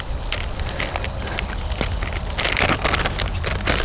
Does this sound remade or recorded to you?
recorded